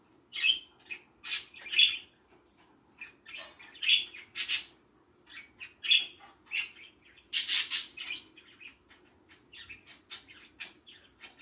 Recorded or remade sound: recorded